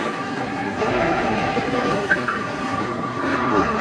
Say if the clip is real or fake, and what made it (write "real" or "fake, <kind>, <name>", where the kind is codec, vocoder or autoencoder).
fake, codec, SNAC